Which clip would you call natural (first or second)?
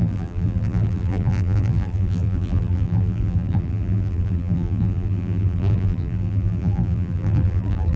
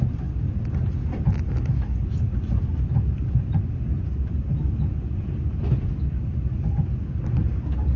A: second